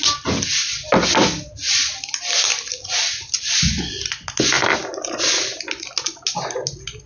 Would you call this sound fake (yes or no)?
no